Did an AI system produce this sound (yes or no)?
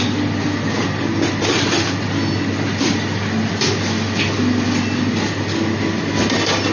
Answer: no